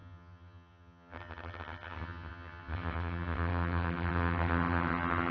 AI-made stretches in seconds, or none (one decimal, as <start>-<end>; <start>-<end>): 0.0-5.3